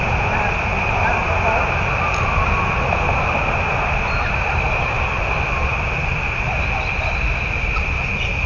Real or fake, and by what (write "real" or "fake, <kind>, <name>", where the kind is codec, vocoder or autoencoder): real